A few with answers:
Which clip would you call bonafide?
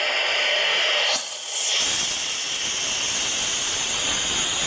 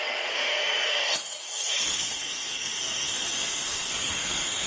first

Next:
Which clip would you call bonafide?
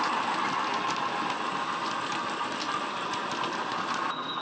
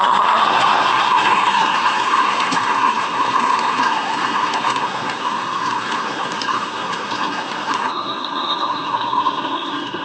first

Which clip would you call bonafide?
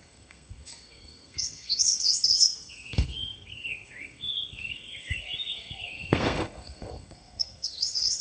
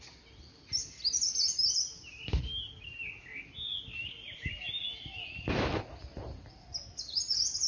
second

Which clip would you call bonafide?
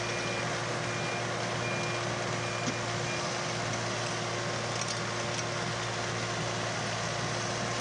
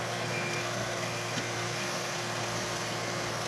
first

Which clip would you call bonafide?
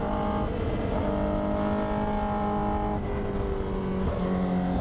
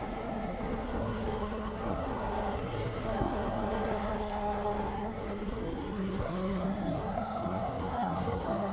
first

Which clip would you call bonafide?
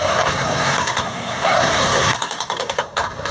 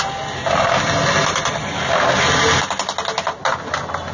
second